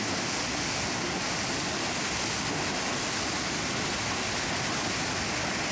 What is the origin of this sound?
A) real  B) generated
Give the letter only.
A